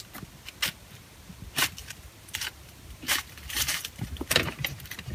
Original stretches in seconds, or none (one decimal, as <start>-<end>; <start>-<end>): 0.0-1.8